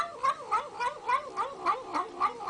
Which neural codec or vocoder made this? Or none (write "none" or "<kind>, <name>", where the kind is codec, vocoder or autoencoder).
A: none